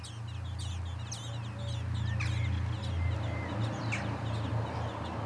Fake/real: real